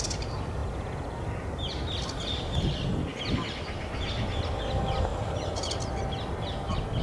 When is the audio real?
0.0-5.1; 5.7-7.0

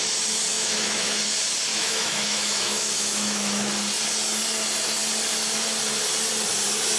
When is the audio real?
0.0-0.5; 1.2-1.7; 3.7-7.0

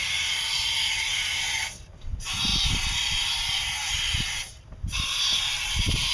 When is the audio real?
0.0-6.1

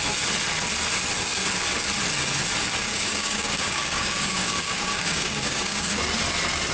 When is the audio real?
0.0-2.8; 6.0-6.7

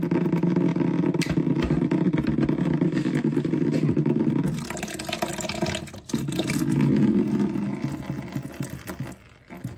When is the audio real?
0.0-0.7; 5.0-9.8

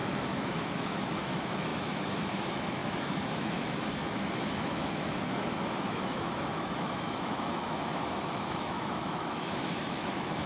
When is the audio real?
none

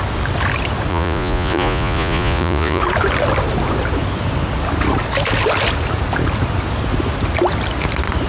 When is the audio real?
0.0-0.9; 2.8-8.3